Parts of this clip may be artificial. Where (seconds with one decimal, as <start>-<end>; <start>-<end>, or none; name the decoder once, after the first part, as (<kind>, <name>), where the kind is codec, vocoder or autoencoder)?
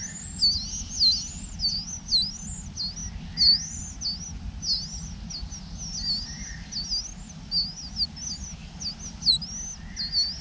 none